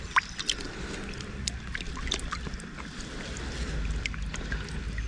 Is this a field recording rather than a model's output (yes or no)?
yes